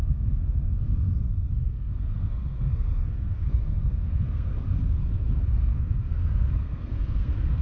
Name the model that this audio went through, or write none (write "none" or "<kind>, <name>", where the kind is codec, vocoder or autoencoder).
codec, SNAC